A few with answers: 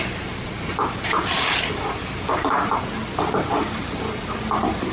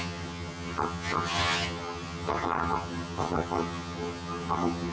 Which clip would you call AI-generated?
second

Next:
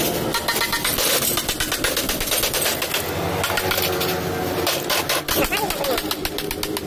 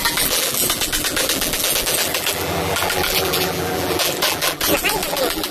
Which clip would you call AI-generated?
second